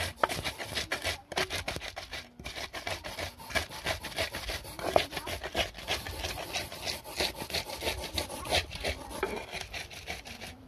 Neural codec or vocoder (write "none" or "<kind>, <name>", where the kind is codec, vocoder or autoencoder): none